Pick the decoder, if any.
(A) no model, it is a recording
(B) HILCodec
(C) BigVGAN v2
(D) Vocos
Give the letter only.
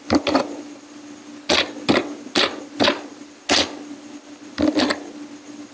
A